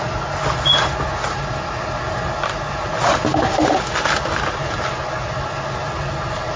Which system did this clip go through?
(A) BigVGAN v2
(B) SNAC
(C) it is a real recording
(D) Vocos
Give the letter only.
C